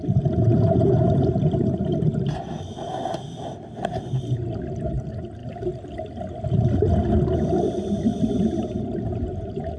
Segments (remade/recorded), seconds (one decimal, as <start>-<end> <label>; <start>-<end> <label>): 0.0-2.9 remade; 2.9-4.9 recorded; 4.9-5.4 remade; 5.4-8.3 recorded; 8.3-9.8 remade